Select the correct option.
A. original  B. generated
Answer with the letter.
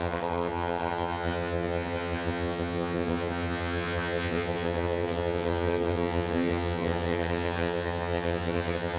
B